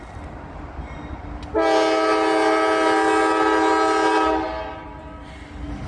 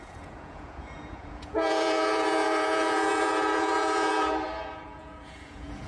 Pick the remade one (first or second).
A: second